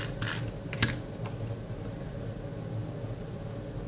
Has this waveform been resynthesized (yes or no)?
no